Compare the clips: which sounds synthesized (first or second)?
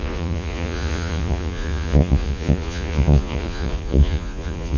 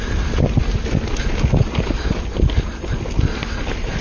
first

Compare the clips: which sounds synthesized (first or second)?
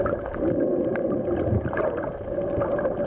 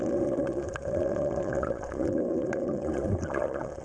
second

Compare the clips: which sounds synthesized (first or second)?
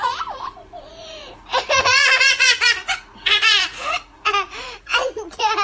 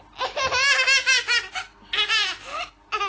first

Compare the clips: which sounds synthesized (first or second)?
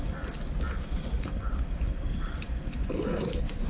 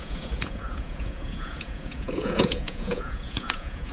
second